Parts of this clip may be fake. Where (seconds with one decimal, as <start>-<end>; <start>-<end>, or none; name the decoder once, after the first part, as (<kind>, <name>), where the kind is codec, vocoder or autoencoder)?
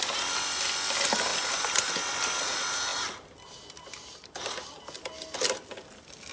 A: none